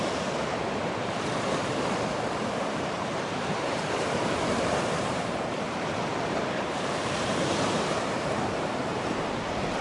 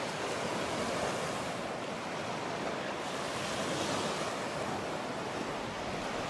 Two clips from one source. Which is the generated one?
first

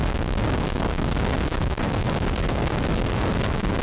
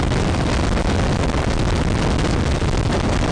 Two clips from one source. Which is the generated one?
first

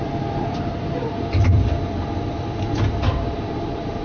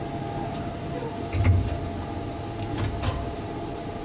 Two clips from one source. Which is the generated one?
first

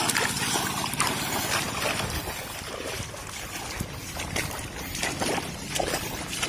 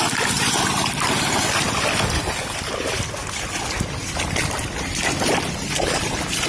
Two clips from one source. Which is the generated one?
first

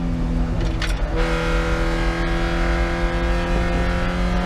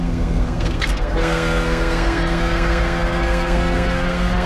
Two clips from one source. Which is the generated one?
second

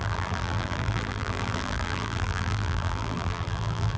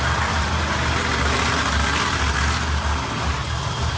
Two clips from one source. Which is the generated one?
first